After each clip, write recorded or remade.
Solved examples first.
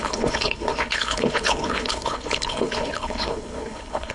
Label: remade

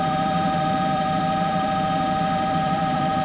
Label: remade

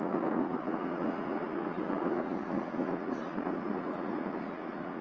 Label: remade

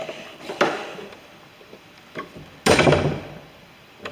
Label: recorded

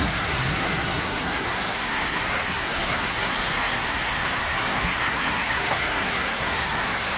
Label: remade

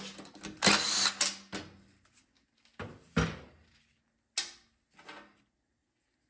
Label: recorded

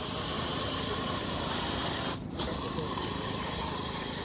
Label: remade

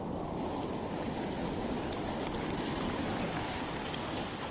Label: recorded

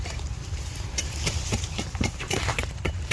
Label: remade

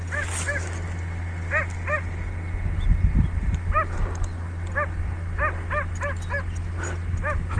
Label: recorded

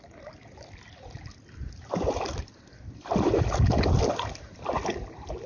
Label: recorded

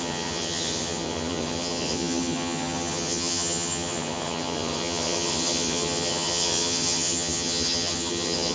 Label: remade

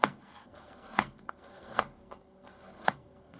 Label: remade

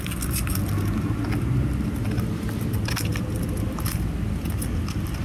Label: recorded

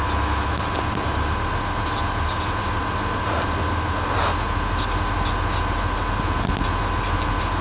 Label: recorded